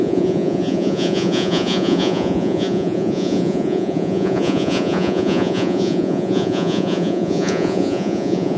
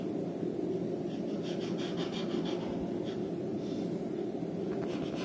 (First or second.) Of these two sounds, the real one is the second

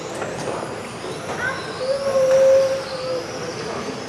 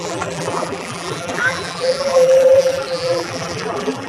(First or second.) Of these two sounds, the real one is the first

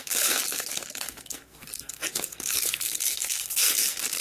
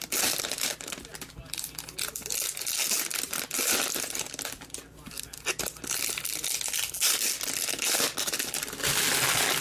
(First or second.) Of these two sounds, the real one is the second